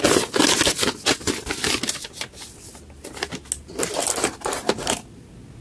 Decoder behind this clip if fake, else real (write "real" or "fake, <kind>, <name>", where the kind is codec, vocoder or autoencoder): real